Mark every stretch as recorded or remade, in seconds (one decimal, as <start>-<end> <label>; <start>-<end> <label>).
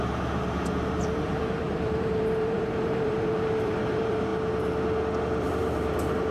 0.0-4.3 remade; 4.3-5.2 recorded; 5.2-6.3 remade